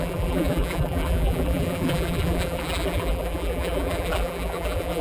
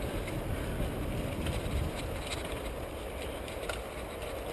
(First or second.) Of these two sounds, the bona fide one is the second